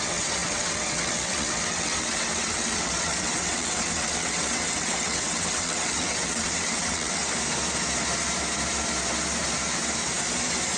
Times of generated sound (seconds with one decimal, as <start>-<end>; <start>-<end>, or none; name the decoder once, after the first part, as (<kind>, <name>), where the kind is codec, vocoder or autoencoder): 0.0-7.2 (vocoder, WaveNeXt)